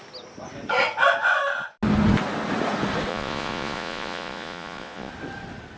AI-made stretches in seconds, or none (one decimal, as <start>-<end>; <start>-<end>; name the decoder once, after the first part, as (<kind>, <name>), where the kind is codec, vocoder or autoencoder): 3.1-5.1 (vocoder, Vocos)